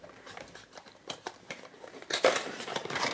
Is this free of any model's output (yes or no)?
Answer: no